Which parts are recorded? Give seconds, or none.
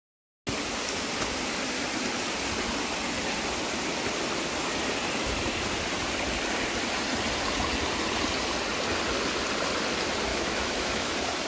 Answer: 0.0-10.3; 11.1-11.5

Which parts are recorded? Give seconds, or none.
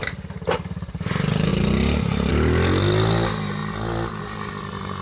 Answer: 0.0-5.0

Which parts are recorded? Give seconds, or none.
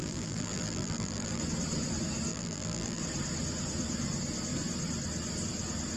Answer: 1.4-2.3; 3.0-6.0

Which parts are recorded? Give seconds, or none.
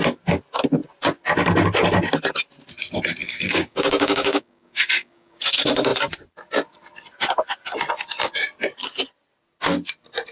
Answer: 0.0-3.2; 5.4-10.3